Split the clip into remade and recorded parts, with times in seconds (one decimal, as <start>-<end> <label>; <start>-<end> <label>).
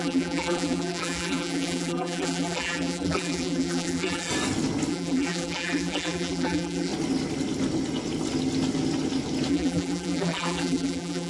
0.0-4.3 remade; 4.3-4.9 recorded; 4.9-6.9 remade; 6.9-9.5 recorded; 9.5-11.3 remade